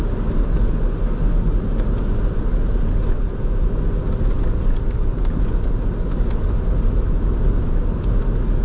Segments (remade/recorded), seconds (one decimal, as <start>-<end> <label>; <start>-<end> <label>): 0.0-8.6 recorded